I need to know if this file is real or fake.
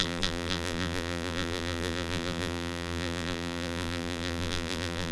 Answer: fake